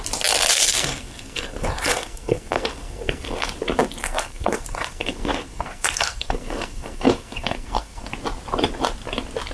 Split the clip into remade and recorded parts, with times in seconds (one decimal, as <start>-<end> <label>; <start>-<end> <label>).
0.0-0.5 recorded; 0.5-3.5 remade; 3.5-4.0 recorded; 4.0-8.1 remade; 8.1-9.5 recorded